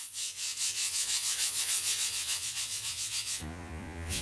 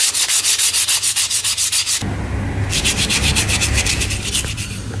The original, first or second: second